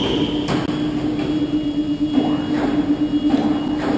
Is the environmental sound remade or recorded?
recorded